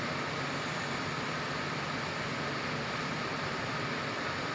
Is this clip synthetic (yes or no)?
no